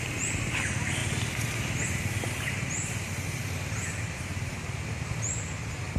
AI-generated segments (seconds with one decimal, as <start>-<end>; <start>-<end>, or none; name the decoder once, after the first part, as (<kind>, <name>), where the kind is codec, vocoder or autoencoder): none